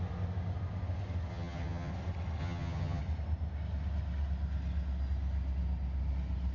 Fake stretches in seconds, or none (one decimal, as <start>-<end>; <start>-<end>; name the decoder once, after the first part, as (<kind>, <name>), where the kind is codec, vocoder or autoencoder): 1.3-1.9 (vocoder, HiFi-GAN); 2.4-3.0